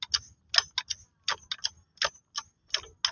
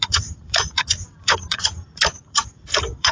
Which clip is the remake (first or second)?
second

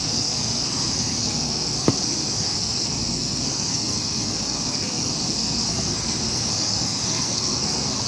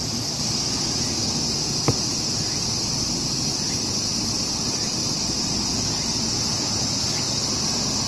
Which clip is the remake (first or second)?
first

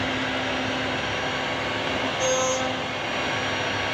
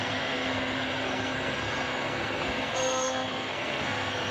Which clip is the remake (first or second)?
second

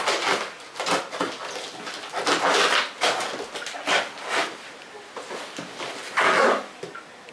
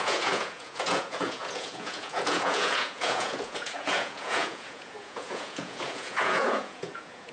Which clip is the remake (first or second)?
second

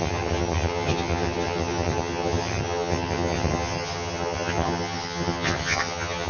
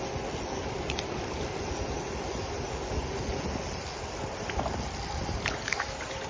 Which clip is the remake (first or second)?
first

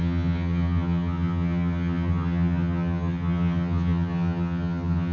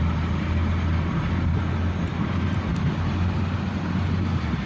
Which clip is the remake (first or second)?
first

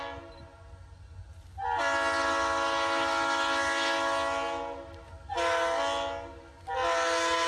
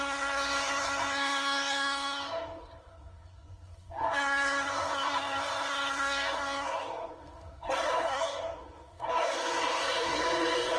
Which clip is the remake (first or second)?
second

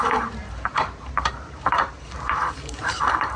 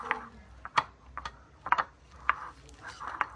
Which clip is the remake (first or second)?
first